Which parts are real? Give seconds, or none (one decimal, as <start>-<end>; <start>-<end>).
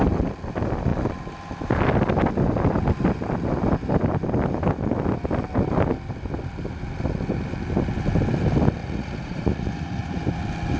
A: 0.0-8.8; 10.2-10.8